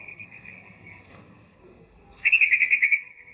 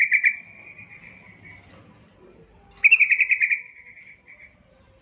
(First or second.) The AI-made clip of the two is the first